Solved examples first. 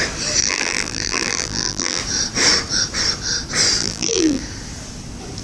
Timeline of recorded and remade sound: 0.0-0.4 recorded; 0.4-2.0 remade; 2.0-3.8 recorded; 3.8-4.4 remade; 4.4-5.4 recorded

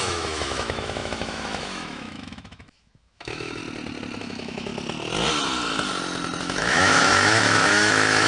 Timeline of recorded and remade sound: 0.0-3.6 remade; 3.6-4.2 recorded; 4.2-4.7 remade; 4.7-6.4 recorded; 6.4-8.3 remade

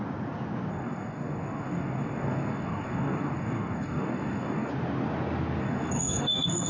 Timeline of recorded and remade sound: 0.0-0.7 recorded; 0.7-4.7 remade; 4.7-5.6 recorded; 5.6-6.7 remade

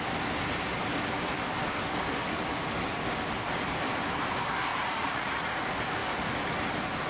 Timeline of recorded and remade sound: 0.0-4.7 recorded; 4.7-5.6 remade; 5.6-7.1 recorded

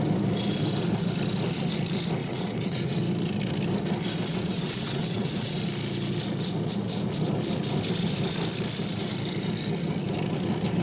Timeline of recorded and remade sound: 0.0-2.2 recorded; 2.2-3.0 remade; 3.0-4.3 recorded; 4.3-5.6 remade; 5.6-10.8 recorded